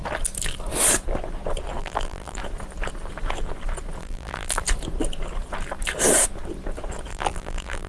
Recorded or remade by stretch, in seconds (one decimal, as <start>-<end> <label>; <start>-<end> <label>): 0.0-1.8 recorded; 1.8-2.4 remade; 2.4-4.0 recorded; 4.0-4.6 remade; 4.6-7.1 recorded; 7.1-7.9 remade